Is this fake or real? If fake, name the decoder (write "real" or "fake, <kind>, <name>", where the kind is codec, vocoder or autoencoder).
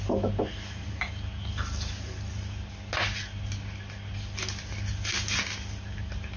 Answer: real